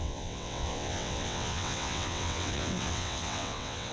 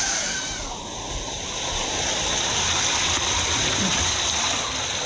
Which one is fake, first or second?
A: first